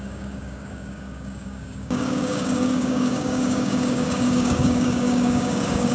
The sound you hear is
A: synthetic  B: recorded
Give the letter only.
A